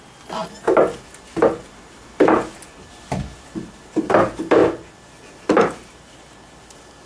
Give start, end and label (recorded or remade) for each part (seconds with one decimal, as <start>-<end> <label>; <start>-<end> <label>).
0.0-7.1 recorded